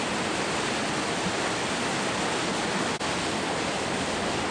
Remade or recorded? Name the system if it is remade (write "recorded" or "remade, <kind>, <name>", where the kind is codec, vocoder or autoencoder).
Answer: recorded